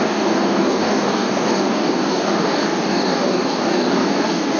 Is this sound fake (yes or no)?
yes